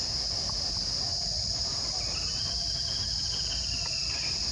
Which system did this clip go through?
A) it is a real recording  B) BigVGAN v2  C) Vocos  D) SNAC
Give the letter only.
A